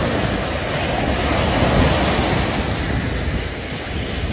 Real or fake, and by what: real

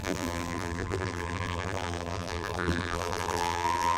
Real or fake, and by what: fake, vocoder, BigVGAN v2